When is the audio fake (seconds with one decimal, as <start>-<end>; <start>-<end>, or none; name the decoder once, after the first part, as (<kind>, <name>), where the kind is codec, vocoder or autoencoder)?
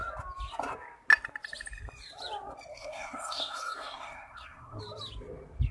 2.7-4.8 (codec, SNAC)